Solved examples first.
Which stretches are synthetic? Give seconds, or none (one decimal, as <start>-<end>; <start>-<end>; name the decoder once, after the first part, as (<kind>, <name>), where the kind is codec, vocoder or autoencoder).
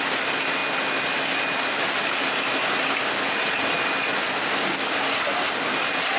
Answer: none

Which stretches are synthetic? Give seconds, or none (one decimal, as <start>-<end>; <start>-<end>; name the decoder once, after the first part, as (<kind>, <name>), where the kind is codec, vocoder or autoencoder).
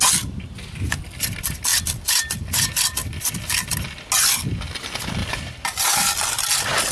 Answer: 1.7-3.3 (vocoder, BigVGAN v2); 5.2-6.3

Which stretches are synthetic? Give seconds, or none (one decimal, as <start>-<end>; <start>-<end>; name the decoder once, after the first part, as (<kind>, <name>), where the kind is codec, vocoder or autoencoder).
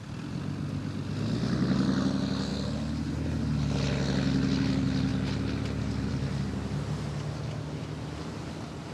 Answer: none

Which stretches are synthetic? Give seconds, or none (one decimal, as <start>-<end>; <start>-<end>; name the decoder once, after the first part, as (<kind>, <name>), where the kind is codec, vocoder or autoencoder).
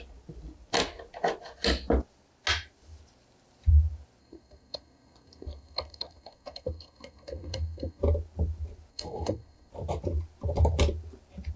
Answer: 4.2-8.0 (codec, SNAC); 8.9-9.7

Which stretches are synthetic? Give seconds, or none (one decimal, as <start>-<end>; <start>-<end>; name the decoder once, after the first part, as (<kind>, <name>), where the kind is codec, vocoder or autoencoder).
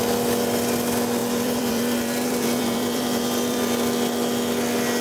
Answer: 1.2-3.6 (vocoder, BigVGAN v2)